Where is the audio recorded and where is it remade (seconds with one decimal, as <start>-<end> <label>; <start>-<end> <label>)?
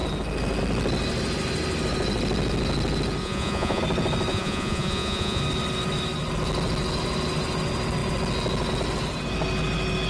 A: 0.0-3.2 recorded; 3.2-3.8 remade; 3.8-4.3 recorded; 4.3-5.4 remade; 5.4-10.1 recorded